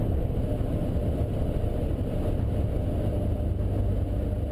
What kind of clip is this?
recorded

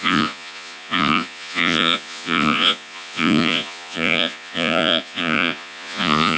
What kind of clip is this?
remade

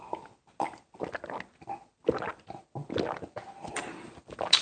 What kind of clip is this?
recorded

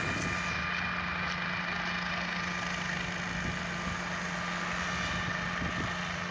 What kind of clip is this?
recorded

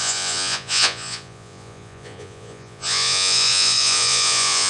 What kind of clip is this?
remade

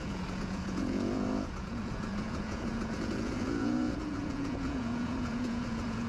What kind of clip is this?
remade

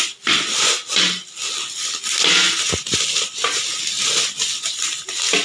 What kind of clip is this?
recorded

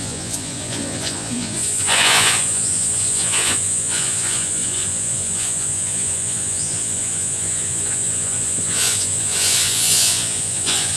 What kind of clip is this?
remade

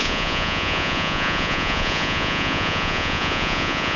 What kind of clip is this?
remade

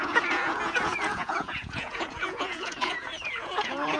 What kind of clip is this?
remade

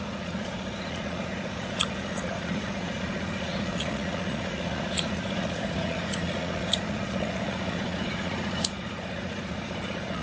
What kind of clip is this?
remade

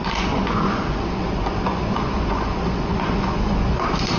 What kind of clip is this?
remade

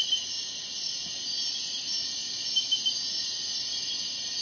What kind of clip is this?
recorded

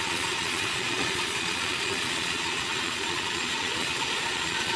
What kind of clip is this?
remade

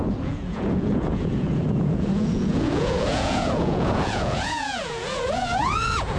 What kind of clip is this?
remade